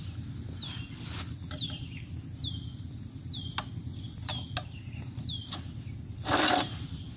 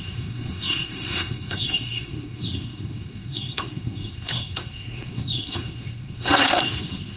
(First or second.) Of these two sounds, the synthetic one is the second